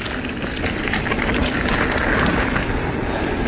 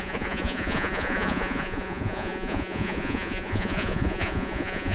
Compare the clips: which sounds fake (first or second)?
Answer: second